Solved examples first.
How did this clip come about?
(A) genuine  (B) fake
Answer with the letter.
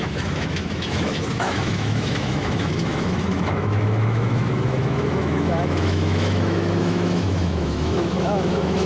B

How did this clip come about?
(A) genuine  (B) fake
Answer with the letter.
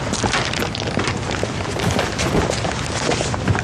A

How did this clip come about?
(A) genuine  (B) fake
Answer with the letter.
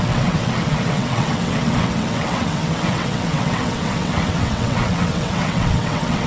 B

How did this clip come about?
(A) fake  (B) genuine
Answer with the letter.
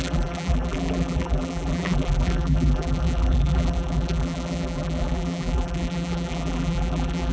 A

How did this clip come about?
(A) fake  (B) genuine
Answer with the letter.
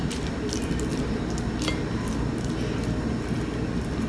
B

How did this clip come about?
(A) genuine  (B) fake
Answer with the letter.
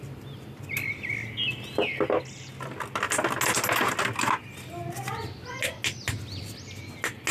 A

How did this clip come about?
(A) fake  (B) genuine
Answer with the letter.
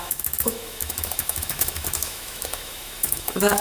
A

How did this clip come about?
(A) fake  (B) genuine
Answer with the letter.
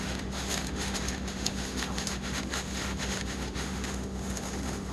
A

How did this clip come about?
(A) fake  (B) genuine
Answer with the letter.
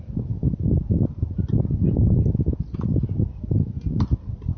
B